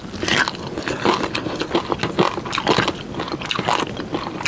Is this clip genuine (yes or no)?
yes